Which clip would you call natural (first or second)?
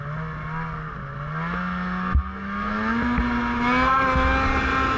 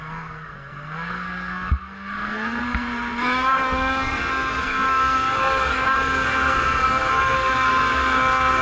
first